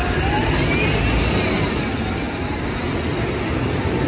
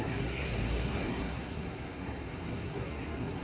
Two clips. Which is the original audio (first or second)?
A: first